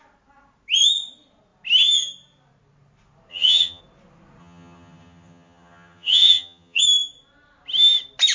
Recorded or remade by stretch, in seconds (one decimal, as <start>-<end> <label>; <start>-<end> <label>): 0.0-3.3 recorded; 3.3-3.8 remade; 3.8-4.4 recorded; 4.4-6.8 remade; 6.8-8.3 recorded